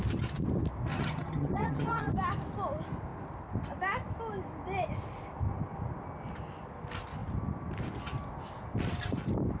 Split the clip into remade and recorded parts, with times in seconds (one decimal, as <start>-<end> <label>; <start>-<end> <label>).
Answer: 0.0-0.9 recorded; 0.9-2.1 remade; 2.1-9.6 recorded